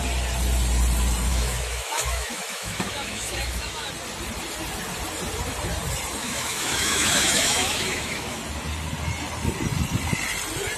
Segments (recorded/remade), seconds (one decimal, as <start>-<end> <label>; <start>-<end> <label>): 0.0-1.3 recorded; 1.3-3.9 remade; 3.9-6.2 recorded; 6.2-8.4 remade; 8.4-10.8 recorded